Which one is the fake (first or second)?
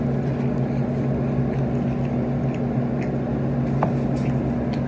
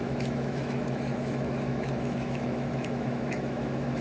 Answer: second